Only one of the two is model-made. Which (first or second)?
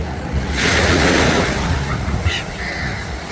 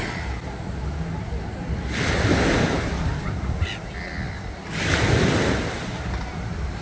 first